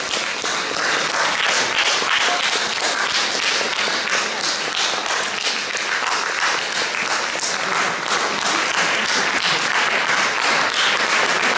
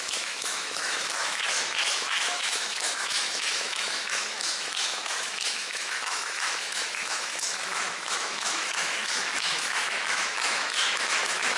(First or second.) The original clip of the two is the first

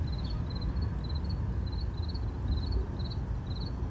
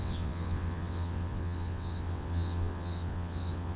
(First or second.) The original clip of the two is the first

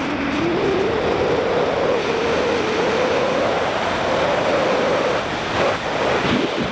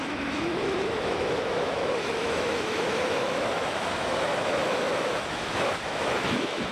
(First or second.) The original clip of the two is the first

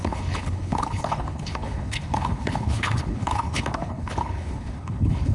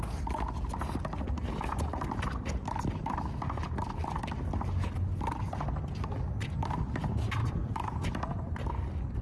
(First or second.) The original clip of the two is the second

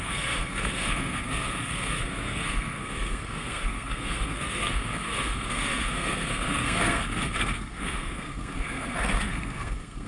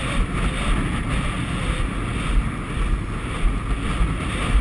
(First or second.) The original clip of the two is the second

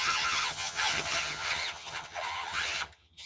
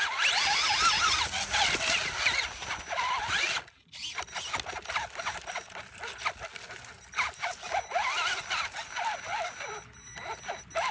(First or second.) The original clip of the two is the second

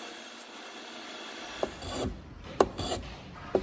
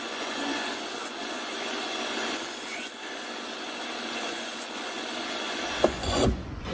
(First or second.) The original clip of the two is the first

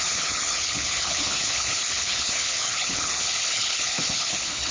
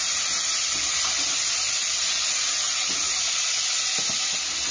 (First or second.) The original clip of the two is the second